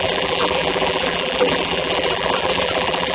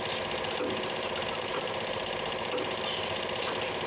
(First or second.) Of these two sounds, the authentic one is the second